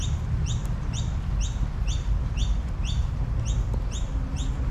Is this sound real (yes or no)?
yes